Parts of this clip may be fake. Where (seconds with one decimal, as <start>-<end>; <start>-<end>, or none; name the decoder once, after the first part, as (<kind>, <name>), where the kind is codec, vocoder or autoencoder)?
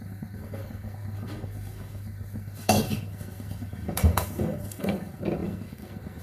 0.0-6.2 (codec, SNAC)